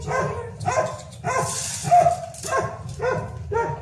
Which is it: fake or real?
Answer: real